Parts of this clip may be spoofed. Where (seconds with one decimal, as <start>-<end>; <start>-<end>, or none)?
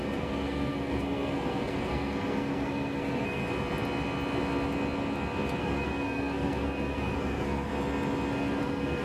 0.0-3.4; 5.6-7.7; 8.6-9.0